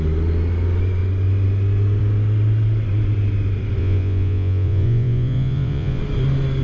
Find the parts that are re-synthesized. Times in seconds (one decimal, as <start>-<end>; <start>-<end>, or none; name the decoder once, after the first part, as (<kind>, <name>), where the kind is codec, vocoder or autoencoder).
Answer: 3.8-6.0 (vocoder, Vocos)